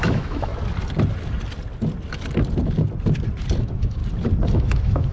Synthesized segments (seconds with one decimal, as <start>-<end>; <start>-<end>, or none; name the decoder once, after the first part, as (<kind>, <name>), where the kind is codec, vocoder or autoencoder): 0.0-0.5 (autoencoder, DAC-VAE); 3.6-4.0; 4.5-5.1